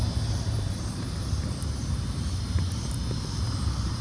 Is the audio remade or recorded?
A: remade